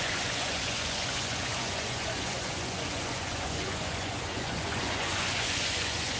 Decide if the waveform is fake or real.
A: fake